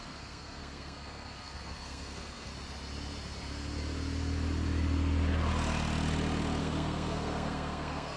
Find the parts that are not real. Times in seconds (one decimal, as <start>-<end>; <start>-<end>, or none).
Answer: 0.0-2.5; 6.6-8.2